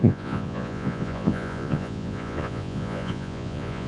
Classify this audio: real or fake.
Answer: fake